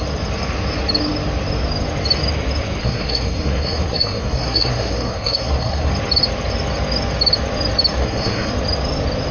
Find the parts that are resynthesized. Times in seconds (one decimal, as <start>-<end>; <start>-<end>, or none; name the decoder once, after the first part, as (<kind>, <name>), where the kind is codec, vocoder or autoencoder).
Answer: 2.8-5.9 (codec, SNAC); 8.0-8.5